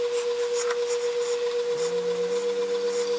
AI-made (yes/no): no